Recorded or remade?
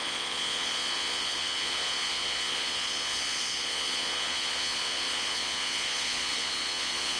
remade